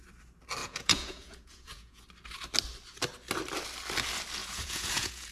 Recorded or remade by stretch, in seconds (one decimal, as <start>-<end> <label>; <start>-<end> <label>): 0.0-0.6 recorded; 0.6-2.0 remade; 2.0-4.4 recorded; 4.4-5.3 remade

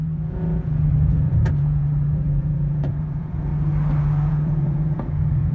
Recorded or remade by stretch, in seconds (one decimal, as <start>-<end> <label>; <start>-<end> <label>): 0.0-3.5 remade; 3.5-4.0 recorded; 4.0-5.5 remade

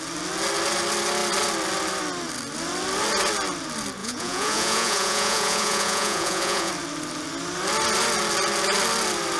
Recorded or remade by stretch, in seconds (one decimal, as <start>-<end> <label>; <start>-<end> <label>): 0.0-4.0 recorded; 4.0-6.7 remade; 6.7-9.4 recorded

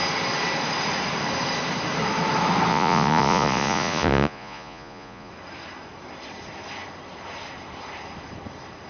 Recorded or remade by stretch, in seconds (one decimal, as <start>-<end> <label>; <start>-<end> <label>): 0.0-2.7 recorded; 2.7-5.3 remade; 5.3-8.9 recorded

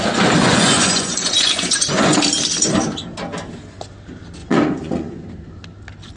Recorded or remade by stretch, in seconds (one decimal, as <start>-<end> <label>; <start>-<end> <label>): 0.0-0.4 recorded; 0.4-2.2 remade; 2.2-4.4 recorded; 4.4-5.3 remade; 5.3-6.2 recorded